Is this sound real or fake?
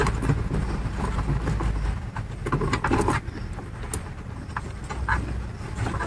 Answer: real